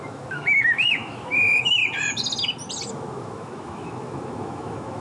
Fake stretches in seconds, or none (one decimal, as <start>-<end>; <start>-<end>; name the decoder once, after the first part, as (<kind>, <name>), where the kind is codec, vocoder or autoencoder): 0.0-1.8 (autoencoder, DAC-VAE); 2.9-5.0